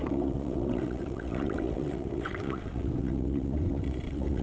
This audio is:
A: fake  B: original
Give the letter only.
A